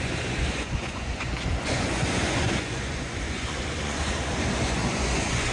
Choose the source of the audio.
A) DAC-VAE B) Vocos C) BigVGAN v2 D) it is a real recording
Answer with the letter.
B